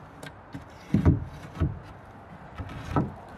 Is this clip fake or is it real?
real